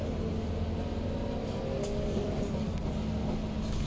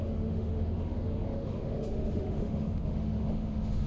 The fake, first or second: second